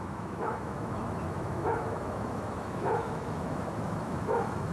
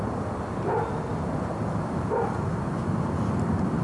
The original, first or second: second